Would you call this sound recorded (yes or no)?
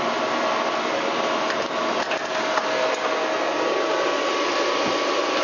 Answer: yes